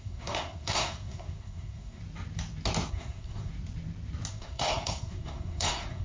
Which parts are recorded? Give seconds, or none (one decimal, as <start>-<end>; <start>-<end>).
2.0-2.9; 3.5-4.3